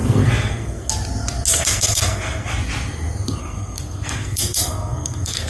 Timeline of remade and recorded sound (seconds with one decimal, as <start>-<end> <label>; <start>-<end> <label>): 0.0-0.9 remade; 0.9-1.5 recorded; 1.5-2.6 remade; 2.6-3.4 recorded; 3.4-5.5 remade